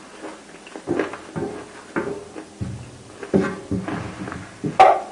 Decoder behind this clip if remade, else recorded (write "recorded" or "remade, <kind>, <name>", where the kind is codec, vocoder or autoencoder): recorded